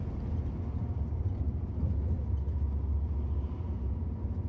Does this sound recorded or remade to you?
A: recorded